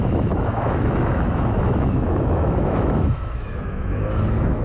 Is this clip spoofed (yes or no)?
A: yes